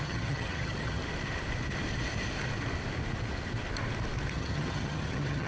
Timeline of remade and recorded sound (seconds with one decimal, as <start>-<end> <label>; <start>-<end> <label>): 0.0-1.0 remade; 1.0-4.3 recorded; 4.3-5.5 remade